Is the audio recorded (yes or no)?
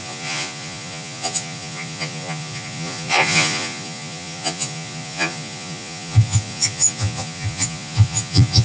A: no